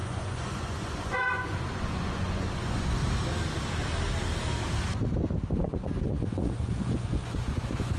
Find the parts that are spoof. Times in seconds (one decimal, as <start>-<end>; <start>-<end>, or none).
0.0-3.0; 5.6-8.0